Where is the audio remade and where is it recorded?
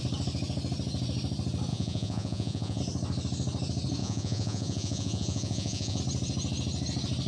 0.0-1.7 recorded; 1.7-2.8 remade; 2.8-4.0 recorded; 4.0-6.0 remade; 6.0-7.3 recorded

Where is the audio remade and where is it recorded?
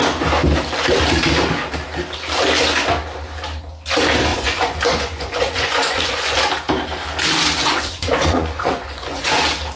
0.0-4.3 recorded; 4.3-6.4 remade; 6.4-7.6 recorded; 7.6-9.4 remade; 9.4-9.8 recorded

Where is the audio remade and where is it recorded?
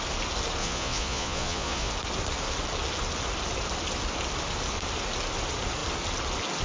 0.0-0.6 recorded; 0.6-1.9 remade; 1.9-6.6 recorded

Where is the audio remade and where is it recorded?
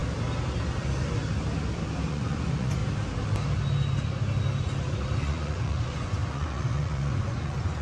0.0-2.1 recorded; 2.1-2.8 remade; 2.8-5.2 recorded; 5.2-7.8 remade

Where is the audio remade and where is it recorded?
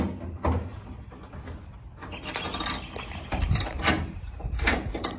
0.0-5.2 recorded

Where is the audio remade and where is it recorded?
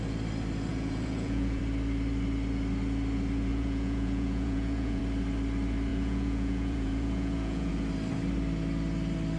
0.0-0.7 recorded; 0.7-1.6 remade; 1.6-3.5 recorded; 3.5-5.0 remade; 5.0-5.9 recorded; 5.9-7.7 remade; 7.7-9.4 recorded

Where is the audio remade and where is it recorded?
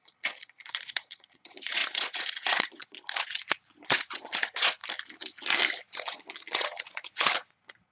0.0-4.8 remade; 4.8-5.8 recorded; 5.8-7.9 remade